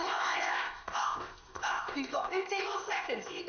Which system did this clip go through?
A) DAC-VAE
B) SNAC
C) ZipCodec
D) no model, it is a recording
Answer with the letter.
C